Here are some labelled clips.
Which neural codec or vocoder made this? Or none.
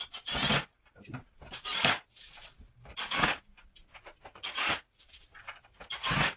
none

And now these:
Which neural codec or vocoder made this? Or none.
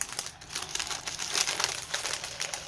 vocoder, BigVGAN v2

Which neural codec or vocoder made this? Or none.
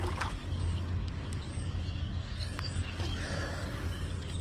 codec, DAC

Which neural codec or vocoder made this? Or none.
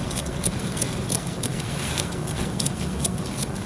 codec, SNAC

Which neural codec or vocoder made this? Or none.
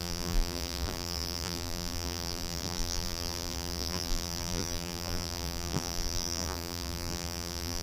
vocoder, BigVGAN v2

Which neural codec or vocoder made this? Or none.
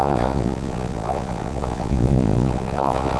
vocoder, Vocos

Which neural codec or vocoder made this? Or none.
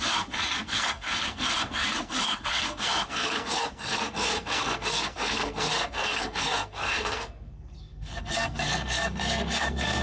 codec, SNAC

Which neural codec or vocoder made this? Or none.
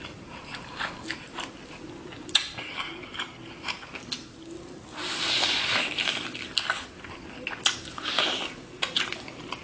none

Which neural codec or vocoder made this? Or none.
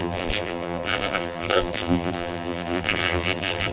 vocoder, BigVGAN v2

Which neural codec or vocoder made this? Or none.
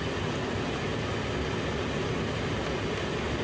none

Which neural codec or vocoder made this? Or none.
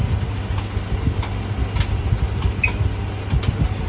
none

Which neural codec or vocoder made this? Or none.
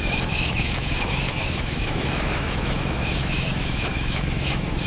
autoencoder, DAC-VAE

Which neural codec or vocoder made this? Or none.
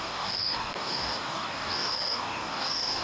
codec, DAC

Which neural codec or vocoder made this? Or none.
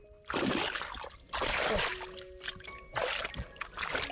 none